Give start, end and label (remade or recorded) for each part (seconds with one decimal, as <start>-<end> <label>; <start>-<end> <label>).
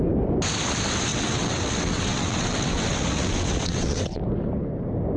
0.0-1.1 recorded; 1.1-4.2 remade; 4.2-5.2 recorded